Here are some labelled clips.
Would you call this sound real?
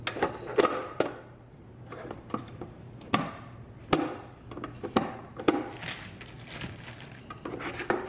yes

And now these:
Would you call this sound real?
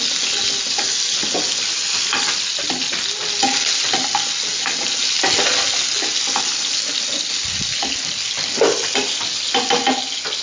yes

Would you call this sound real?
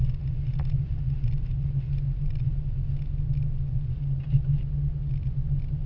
yes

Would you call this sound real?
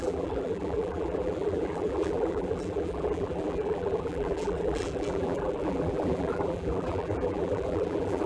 no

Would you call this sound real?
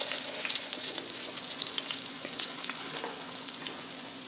no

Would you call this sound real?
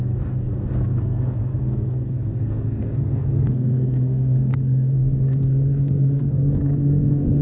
no